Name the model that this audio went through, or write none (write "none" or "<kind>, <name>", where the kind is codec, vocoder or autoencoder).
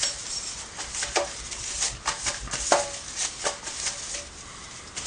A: none